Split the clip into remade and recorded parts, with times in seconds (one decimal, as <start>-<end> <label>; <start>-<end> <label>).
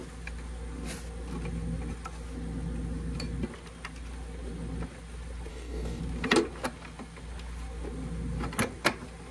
0.0-5.5 recorded; 5.5-6.0 remade; 6.0-9.3 recorded